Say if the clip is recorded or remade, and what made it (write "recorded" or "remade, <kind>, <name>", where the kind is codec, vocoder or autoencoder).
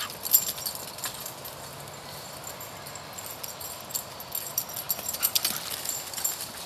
recorded